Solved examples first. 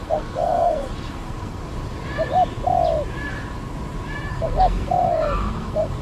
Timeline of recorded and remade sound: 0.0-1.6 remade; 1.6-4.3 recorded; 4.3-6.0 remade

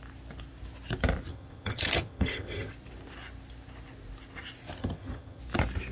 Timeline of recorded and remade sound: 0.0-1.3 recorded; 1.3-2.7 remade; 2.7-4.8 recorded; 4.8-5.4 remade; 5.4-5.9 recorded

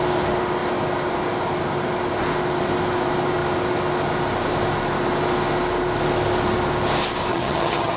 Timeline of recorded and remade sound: 0.0-7.3 recorded; 7.3-8.0 remade

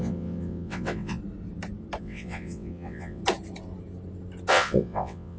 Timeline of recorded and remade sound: 0.0-1.2 remade; 1.2-2.0 recorded; 2.0-3.2 remade; 3.2-4.5 recorded; 4.5-5.4 remade

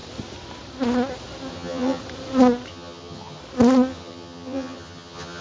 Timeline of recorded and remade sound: 0.0-1.5 recorded; 1.5-2.0 remade; 2.0-2.7 recorded; 2.7-3.4 remade; 3.4-3.9 recorded; 3.9-5.4 remade